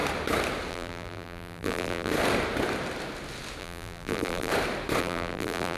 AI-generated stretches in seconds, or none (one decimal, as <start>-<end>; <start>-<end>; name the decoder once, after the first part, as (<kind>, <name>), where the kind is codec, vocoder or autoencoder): 0.7-2.1 (vocoder, BigVGAN v2); 3.6-4.5; 5.0-5.8